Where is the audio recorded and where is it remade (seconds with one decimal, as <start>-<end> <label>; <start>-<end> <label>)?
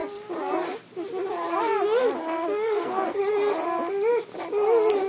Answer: 0.0-2.2 recorded; 2.2-3.2 remade; 3.2-5.1 recorded